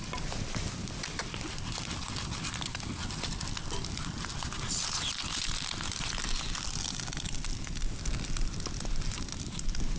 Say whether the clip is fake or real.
real